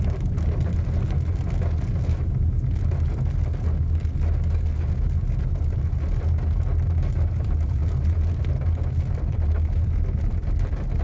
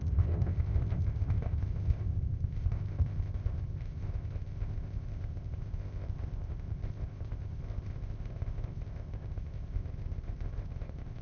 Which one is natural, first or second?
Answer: first